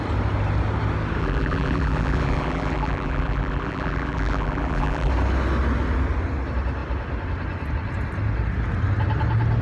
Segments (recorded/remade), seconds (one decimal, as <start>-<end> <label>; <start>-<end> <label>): 0.0-1.2 recorded; 1.2-5.1 remade; 5.1-9.6 recorded